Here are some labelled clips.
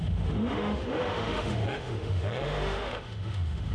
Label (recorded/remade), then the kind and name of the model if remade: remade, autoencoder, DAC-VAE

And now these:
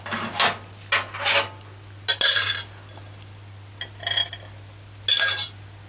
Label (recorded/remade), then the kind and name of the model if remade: recorded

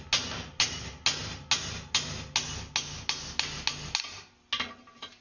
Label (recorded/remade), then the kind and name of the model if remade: recorded